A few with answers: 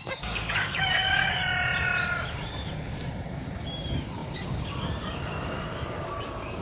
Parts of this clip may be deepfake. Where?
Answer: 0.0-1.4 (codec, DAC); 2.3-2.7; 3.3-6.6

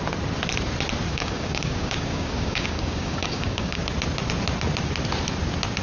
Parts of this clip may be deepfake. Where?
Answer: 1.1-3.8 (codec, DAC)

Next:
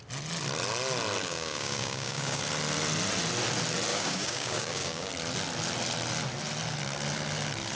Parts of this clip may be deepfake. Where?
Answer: 1.2-2.4 (codec, DAC); 3.9-5.1

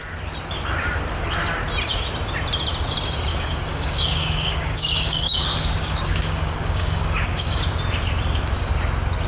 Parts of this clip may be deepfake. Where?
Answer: 3.3-7.6 (codec, DAC)

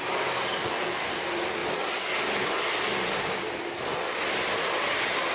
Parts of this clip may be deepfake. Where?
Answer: 0.6-1.2 (codec, DAC)

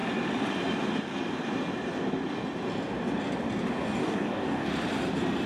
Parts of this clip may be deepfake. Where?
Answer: 4.0-4.7 (codec, DAC)

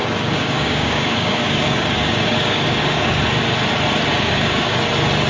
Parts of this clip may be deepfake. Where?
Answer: 0.0-3.2 (codec, DAC); 4.1-4.8

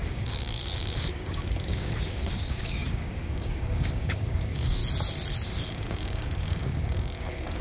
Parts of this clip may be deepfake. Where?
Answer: 0.0-4.8 (codec, DAC); 5.7-7.6